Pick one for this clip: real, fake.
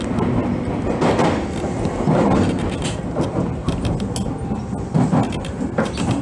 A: real